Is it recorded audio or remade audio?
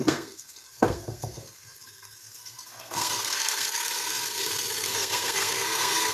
remade